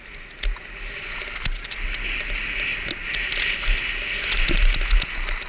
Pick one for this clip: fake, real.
real